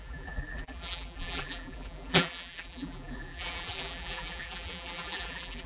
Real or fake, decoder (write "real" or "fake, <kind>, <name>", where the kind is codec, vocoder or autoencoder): fake, vocoder, BigVGAN v2